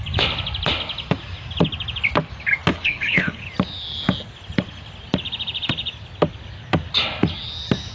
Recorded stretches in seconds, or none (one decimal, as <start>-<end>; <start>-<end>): 0.0-2.7; 3.4-7.9